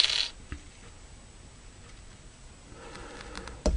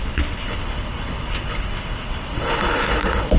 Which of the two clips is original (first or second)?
first